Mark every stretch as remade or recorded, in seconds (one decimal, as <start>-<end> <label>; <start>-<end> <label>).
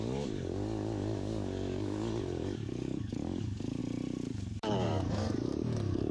0.0-3.8 remade; 3.8-4.6 recorded; 4.6-6.1 remade